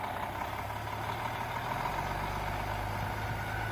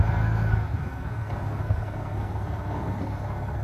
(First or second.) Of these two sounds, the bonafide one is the first